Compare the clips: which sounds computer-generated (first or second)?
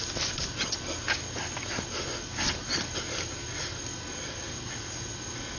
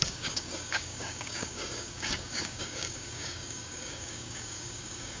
second